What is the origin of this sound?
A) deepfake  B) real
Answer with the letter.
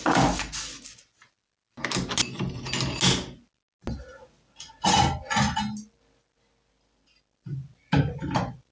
B